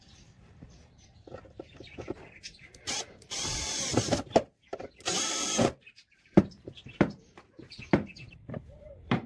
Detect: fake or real fake